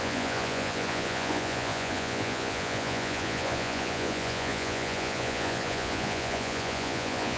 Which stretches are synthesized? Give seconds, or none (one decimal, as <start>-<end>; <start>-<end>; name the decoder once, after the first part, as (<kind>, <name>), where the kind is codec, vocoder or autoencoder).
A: 0.0-7.4 (vocoder, Vocos)